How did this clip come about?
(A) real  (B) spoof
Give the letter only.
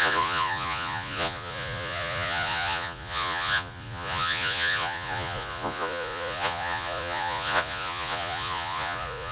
B